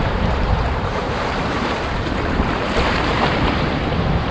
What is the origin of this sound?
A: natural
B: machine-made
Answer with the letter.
B